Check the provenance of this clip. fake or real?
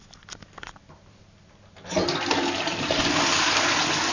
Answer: real